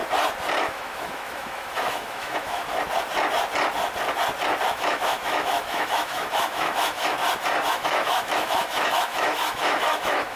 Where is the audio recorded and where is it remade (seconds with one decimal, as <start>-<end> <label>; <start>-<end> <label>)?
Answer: 0.0-0.6 recorded; 0.6-2.6 remade; 2.6-4.7 recorded; 4.7-7.2 remade; 7.2-7.7 recorded; 7.7-10.4 remade